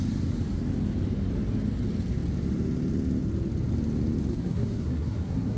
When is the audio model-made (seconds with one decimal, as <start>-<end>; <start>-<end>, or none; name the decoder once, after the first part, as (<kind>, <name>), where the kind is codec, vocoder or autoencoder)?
4.3-5.6 (codec, SNAC)

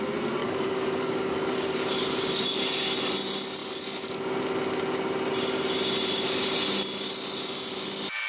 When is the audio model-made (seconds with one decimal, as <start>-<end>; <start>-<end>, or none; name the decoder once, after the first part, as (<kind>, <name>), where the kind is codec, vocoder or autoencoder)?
0.4-2.6 (codec, DAC)

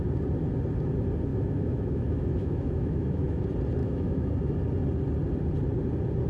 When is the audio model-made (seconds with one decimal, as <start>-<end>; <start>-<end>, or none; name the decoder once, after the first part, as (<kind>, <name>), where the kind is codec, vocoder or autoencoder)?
1.3-3.4 (autoencoder, DAC-VAE); 3.8-4.3

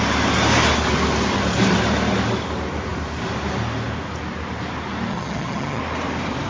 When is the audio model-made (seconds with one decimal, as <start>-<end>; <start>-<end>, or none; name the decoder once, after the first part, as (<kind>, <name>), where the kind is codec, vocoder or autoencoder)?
5.1-5.8 (vocoder, HiFi-GAN)

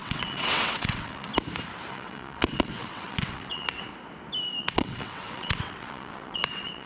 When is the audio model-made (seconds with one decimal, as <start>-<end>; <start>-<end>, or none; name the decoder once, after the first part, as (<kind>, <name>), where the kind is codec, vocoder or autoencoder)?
0.0-1.3 (vocoder, WaveNeXt); 1.9-3.9; 4.6-6.9

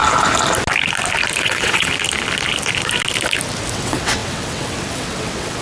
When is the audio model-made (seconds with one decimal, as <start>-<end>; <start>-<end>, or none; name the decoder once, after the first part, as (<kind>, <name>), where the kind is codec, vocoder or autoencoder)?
1.4-1.9 (vocoder, WaveNeXt); 3.7-5.6

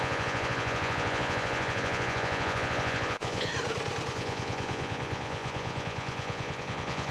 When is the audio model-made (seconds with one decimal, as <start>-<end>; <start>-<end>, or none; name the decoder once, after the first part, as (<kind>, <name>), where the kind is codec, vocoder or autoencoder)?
0.0-3.5 (vocoder, Vocos); 4.1-7.1